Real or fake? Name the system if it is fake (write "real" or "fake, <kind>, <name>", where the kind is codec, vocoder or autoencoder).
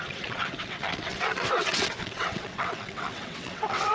fake, vocoder, WaveNeXt